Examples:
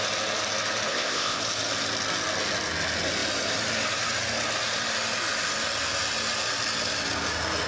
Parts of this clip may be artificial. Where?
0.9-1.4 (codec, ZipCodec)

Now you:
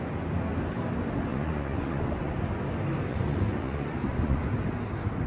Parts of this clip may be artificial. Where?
1.3-2.4 (vocoder, Vocos); 3.1-4.4

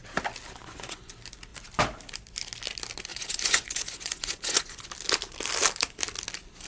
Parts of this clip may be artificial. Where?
0.6-1.1 (vocoder, Vocos); 3.1-4.9

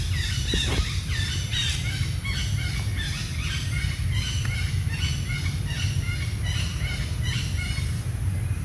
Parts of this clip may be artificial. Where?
6.7-7.2 (vocoder, BigVGAN v2)

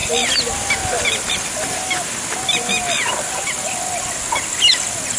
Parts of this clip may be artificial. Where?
none

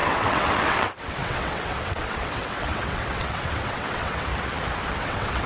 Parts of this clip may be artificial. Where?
0.0-4.3 (vocoder, WaveNeXt); 5.0-5.5

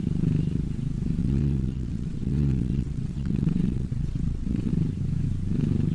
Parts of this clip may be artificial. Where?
1.2-4.7 (vocoder, WaveNeXt)

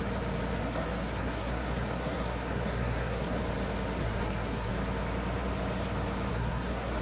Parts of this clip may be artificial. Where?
0.6-3.4 (codec, SNAC); 4.0-4.7; 6.3-7.0